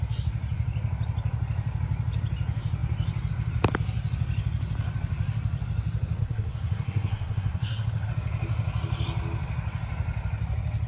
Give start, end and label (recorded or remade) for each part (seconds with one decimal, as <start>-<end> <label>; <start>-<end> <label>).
0.0-6.2 recorded; 6.2-8.1 remade; 8.1-10.9 recorded